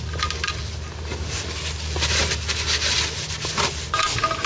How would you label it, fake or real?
real